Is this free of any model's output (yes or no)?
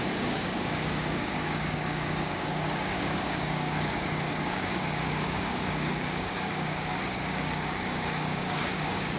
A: no